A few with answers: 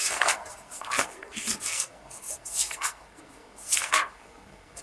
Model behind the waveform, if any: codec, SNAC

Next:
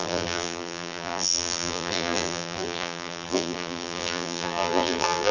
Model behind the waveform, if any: vocoder, BigVGAN v2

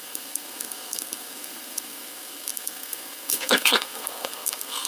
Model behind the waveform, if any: codec, SNAC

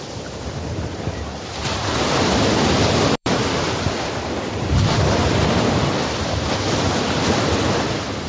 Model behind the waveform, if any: vocoder, BigVGAN v2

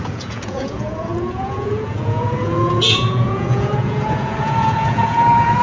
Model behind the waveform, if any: vocoder, Vocos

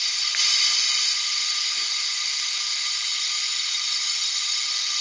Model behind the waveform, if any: none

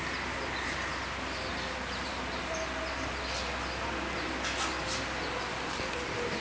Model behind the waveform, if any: none